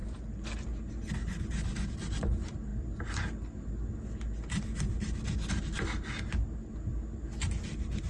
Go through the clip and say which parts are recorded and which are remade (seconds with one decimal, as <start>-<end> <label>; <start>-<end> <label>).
0.0-8.1 recorded